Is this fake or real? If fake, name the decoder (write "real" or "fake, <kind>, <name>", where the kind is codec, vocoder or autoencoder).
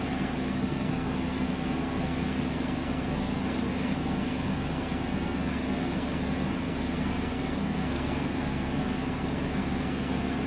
fake, codec, SNAC